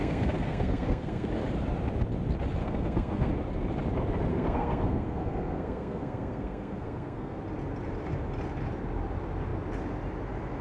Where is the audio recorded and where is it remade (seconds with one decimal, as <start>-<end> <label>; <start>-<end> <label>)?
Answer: 0.0-1.3 remade; 1.3-2.6 recorded; 2.6-3.3 remade; 3.3-4.3 recorded; 4.3-7.4 remade; 7.4-10.6 recorded